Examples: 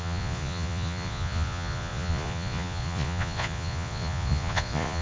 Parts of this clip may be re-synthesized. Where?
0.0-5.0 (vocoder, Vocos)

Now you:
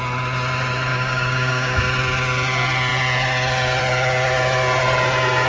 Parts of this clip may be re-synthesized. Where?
0.9-1.8 (codec, DAC)

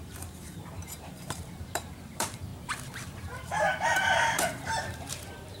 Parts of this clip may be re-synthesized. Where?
0.0-2.5 (vocoder, BigVGAN v2); 3.2-5.6

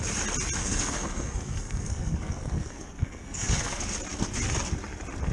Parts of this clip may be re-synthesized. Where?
0.6-3.8 (codec, SNAC)